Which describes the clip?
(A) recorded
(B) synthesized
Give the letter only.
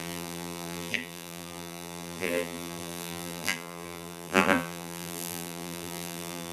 B